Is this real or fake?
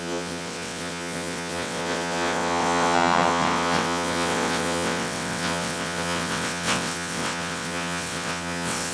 fake